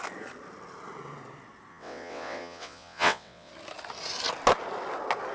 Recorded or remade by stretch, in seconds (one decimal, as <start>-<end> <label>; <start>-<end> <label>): 0.0-1.7 recorded; 1.7-3.5 remade; 3.5-5.3 recorded